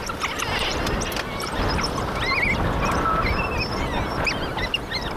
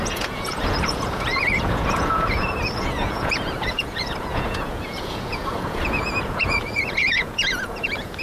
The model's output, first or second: second